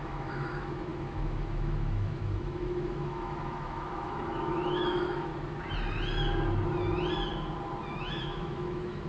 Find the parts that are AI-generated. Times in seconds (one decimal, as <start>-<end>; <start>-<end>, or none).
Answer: 0.0-5.3; 7.9-9.1